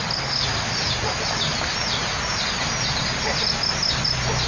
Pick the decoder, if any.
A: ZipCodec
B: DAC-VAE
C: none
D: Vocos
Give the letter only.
C